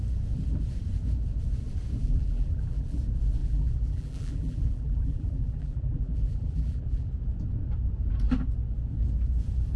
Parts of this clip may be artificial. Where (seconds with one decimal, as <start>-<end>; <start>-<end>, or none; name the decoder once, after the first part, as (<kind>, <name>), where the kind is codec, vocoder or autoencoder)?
2.0-3.0 (vocoder, BigVGAN v2); 3.4-7.1